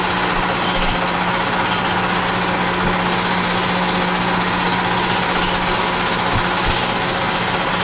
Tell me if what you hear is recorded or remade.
recorded